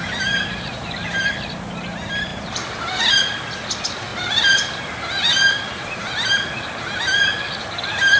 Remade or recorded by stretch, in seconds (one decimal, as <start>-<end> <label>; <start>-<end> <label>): 0.0-2.3 recorded; 2.3-3.0 remade; 3.0-4.1 recorded; 4.1-6.1 remade; 6.1-8.2 recorded